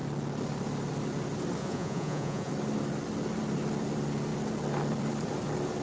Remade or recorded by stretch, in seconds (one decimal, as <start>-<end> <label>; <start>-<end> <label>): 0.0-1.6 recorded; 1.6-2.5 remade; 2.5-5.8 recorded